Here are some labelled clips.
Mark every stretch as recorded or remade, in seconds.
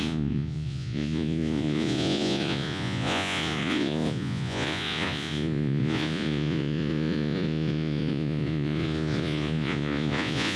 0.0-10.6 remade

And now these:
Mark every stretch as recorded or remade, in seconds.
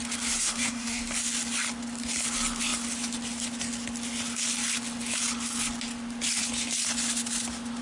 0.0-0.4 recorded; 0.4-1.0 remade; 1.0-7.8 recorded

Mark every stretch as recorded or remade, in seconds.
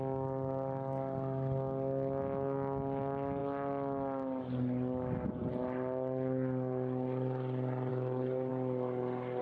0.0-9.4 recorded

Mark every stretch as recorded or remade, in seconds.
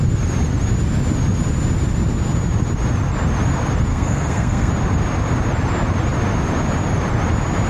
0.0-3.9 recorded; 3.9-4.7 remade; 4.7-7.7 recorded